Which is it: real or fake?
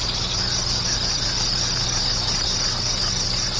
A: real